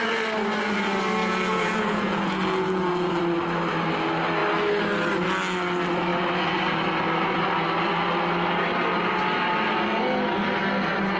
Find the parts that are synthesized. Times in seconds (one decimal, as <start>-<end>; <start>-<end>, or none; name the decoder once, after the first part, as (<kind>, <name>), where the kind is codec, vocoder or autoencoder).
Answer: 1.2-3.2 (vocoder, Vocos)